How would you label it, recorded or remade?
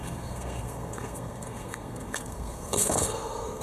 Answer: remade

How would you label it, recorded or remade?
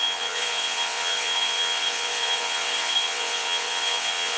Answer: remade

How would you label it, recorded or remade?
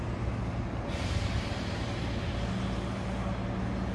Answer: recorded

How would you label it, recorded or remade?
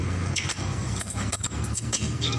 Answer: remade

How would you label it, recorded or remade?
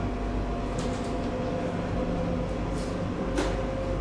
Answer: recorded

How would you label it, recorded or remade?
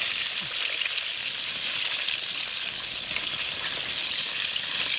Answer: recorded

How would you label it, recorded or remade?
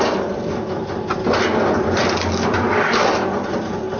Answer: recorded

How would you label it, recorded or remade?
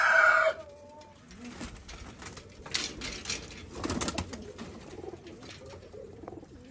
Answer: recorded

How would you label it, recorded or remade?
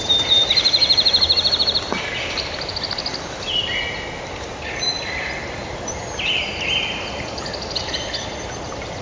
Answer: recorded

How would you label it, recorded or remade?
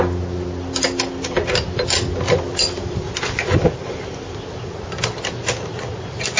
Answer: recorded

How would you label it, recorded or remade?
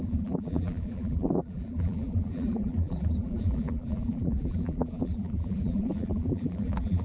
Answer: remade